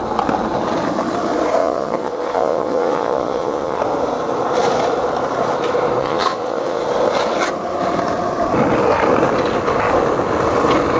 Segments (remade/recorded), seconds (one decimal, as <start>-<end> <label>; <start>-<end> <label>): 0.0-1.6 recorded; 1.6-3.8 remade; 3.8-6.0 recorded; 6.0-6.8 remade; 6.8-11.0 recorded